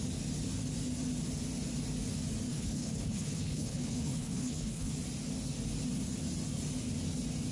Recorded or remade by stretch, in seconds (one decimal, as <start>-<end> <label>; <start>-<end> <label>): 0.0-2.5 recorded; 2.5-4.9 remade; 4.9-7.5 recorded